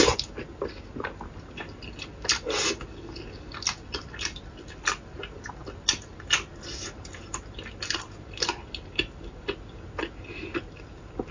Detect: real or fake real